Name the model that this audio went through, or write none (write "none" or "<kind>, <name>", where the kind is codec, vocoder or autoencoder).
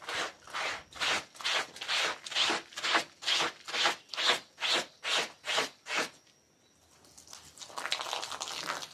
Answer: none